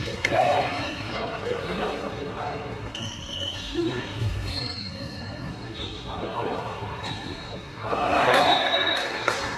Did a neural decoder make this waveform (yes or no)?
yes